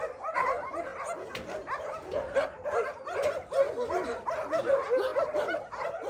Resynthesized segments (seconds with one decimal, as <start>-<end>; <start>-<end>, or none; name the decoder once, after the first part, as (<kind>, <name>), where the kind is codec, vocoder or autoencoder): none